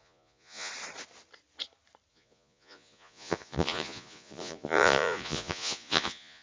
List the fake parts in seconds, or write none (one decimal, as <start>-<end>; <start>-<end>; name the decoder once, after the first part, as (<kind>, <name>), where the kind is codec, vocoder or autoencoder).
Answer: 0.0-0.7 (vocoder, Vocos); 2.1-6.4